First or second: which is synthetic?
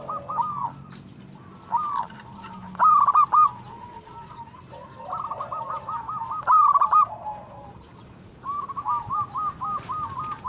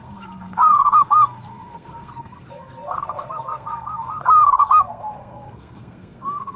second